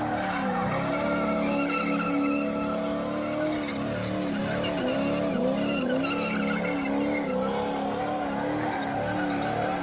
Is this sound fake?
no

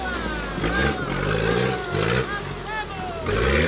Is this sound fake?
no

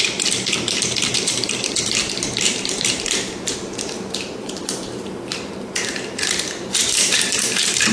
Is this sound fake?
yes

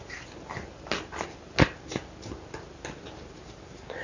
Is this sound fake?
no